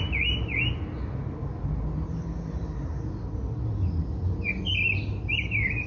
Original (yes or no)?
yes